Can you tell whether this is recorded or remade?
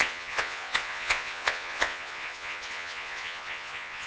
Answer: remade